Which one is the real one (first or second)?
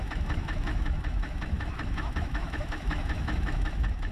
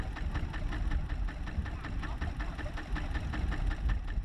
second